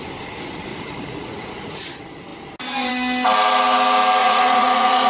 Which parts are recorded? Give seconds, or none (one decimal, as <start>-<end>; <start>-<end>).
0.0-0.7; 1.8-4.2